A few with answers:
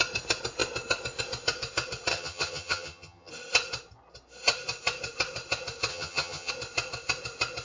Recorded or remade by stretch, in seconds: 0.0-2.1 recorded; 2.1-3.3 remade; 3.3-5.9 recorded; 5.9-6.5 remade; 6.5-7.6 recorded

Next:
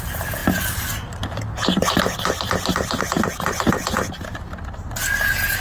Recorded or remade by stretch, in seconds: 0.0-5.6 recorded

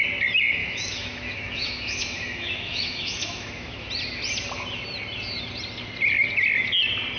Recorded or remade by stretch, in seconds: 0.0-0.6 recorded; 0.6-3.9 remade; 3.9-7.2 recorded

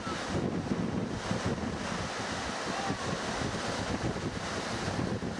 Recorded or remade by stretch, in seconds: 0.0-5.4 recorded

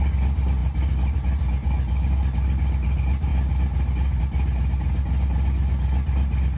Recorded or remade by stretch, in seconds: 0.0-6.6 recorded

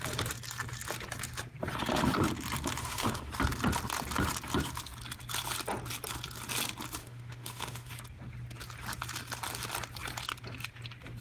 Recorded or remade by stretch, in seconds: 0.0-2.8 recorded; 2.8-3.3 remade; 3.3-7.0 recorded; 7.0-7.9 remade; 7.9-11.2 recorded

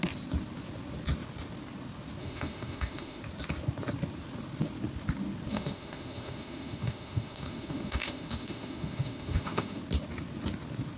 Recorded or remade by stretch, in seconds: 0.0-2.2 recorded; 2.2-3.2 remade; 3.2-5.5 recorded; 5.5-9.8 remade; 9.8-11.0 recorded